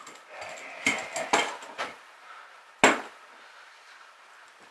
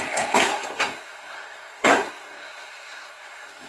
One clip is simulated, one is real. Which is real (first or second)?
first